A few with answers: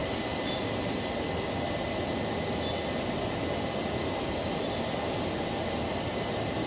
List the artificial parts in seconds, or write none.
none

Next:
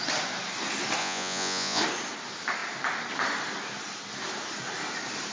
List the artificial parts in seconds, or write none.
1.0-1.8 (vocoder, Vocos)

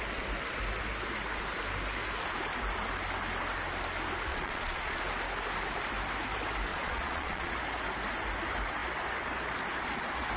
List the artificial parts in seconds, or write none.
4.3-5.0 (vocoder, Vocos); 6.7-7.5

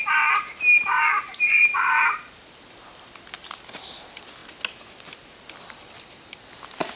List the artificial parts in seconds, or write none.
none